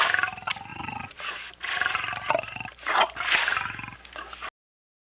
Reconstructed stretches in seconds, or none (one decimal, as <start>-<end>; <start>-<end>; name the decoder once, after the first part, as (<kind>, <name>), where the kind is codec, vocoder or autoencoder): 0.7-1.2 (vocoder, Vocos)

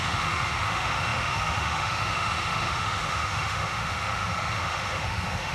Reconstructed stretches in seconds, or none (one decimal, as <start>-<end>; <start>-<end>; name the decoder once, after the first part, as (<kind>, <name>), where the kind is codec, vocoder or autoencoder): 0.0-5.5 (autoencoder, DAC-VAE)

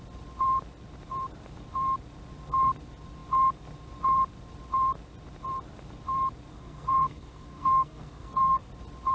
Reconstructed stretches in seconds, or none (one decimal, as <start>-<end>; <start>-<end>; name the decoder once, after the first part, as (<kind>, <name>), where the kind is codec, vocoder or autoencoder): 6.5-8.7 (codec, SNAC)